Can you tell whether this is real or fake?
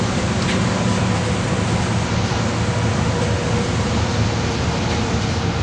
real